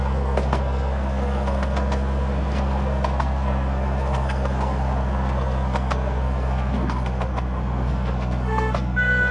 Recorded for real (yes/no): no